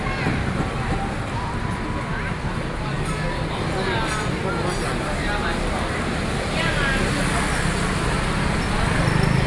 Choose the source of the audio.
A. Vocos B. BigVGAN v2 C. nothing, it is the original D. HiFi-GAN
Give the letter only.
C